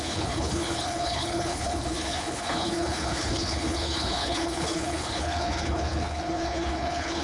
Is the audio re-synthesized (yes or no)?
yes